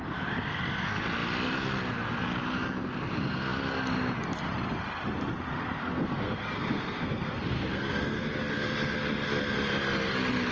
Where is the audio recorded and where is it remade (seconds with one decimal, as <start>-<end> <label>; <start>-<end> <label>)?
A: 0.0-5.8 recorded; 5.8-7.9 remade; 7.9-10.5 recorded